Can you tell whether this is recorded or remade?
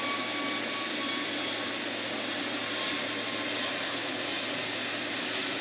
recorded